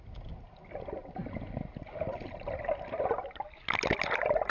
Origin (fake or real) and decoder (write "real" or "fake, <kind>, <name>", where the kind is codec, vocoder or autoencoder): real